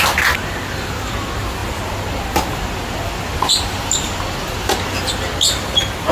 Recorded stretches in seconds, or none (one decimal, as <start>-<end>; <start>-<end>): 0.0-6.1